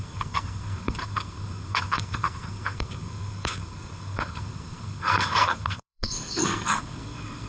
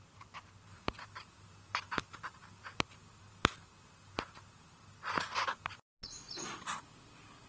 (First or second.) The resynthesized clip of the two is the first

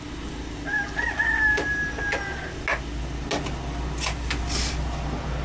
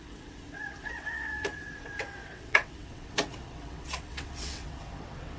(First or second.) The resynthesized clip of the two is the second